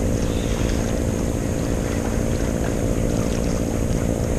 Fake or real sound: real